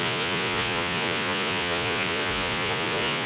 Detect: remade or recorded remade